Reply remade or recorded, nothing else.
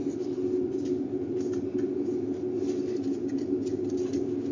recorded